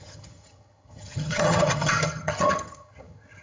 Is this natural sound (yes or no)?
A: no